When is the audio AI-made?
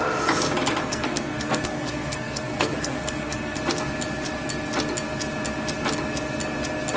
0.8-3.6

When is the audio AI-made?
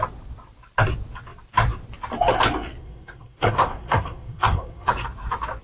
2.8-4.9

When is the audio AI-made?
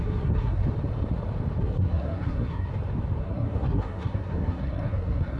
0.0-0.6; 1.6-2.7; 3.2-5.4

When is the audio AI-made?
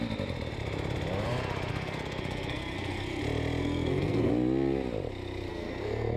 1.7-3.2; 3.6-4.3; 5.5-6.2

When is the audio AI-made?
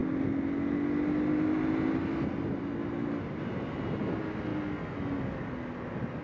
none